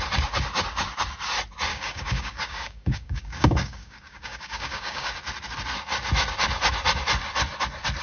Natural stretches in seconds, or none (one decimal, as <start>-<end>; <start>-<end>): 0.0-1.7; 5.1-8.0